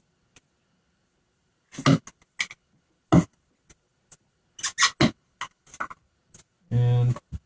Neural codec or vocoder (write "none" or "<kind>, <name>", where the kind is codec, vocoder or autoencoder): none